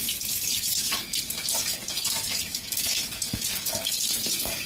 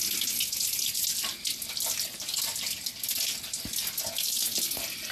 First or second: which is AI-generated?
first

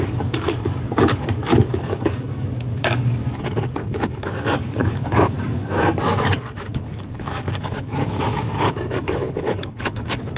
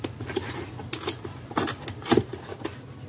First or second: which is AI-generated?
first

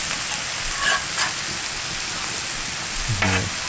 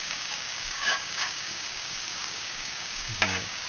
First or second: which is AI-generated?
second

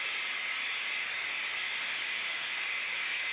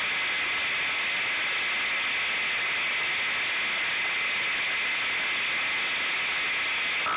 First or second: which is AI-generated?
first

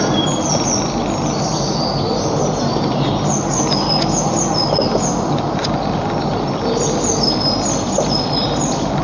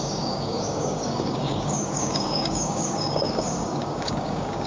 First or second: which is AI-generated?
second